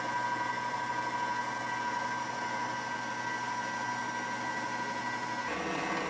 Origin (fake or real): real